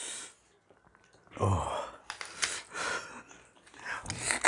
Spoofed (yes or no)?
no